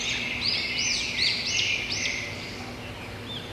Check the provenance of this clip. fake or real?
real